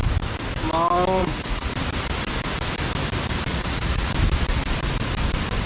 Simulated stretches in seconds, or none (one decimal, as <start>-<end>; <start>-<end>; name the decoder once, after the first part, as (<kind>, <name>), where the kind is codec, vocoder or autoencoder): 1.2-1.7 (vocoder, Vocos); 3.5-4.1